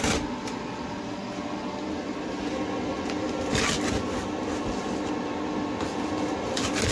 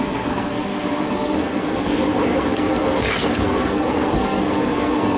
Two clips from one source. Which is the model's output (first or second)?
second